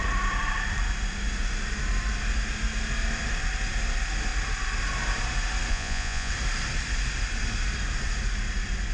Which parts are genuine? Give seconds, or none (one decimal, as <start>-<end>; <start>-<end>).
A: 0.0-5.7; 6.3-8.9